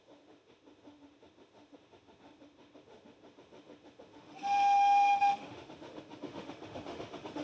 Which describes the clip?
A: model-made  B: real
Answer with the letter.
A